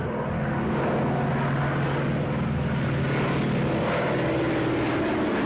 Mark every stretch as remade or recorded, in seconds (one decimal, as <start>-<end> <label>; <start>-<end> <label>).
0.0-5.5 recorded